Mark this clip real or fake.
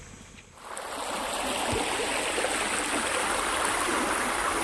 real